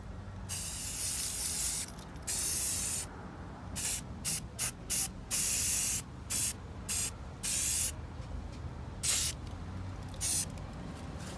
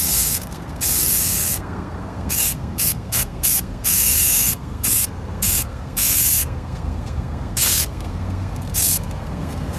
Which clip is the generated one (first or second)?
second